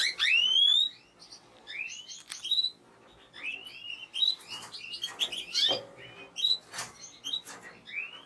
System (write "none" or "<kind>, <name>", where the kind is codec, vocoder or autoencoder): none